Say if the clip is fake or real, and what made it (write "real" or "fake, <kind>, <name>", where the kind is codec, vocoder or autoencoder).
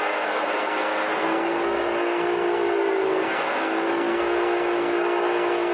fake, codec, SNAC